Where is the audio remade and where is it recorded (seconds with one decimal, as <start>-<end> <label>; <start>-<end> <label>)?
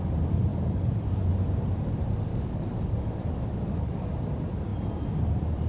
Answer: 0.0-0.5 recorded; 0.5-1.3 remade; 1.3-2.3 recorded; 2.3-4.1 remade; 4.1-5.7 recorded